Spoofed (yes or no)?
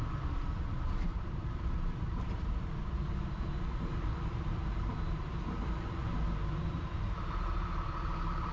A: yes